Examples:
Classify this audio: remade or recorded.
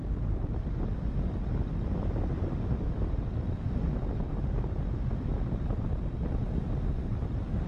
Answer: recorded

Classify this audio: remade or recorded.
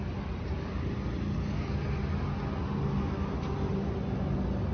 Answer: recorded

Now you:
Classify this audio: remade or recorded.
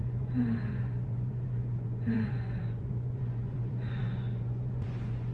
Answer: remade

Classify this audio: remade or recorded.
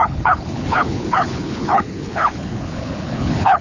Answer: remade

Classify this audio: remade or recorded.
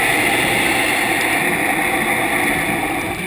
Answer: recorded